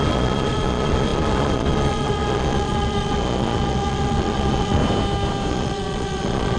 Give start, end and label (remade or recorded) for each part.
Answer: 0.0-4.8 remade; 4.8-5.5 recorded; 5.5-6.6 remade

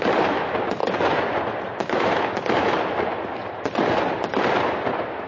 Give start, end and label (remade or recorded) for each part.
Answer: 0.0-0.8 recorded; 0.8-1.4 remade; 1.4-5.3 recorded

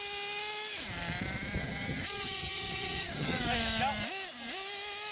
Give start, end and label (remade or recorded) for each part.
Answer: 0.0-1.6 recorded; 1.6-3.4 remade; 3.4-5.1 recorded

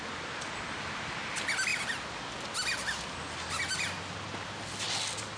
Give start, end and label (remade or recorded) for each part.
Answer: 0.0-5.4 recorded

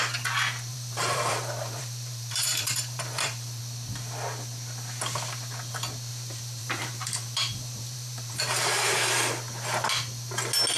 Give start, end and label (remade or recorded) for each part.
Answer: 0.0-0.7 recorded; 0.7-3.6 remade; 3.6-6.1 recorded; 6.1-9.3 remade; 9.3-10.8 recorded

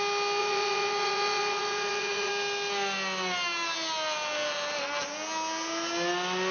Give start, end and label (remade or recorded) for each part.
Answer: 0.0-0.4 recorded; 0.4-2.3 remade; 2.3-6.5 recorded